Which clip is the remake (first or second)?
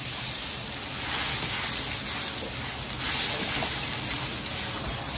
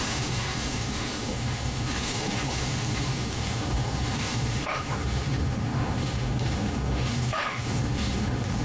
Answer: second